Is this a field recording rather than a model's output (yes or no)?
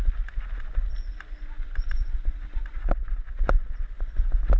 yes